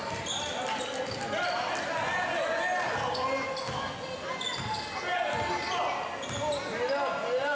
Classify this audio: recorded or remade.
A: recorded